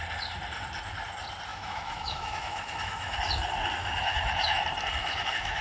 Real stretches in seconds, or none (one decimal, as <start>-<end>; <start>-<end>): 0.0-1.5; 3.2-3.8; 4.6-5.0